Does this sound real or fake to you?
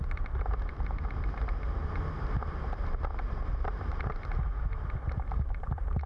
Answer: fake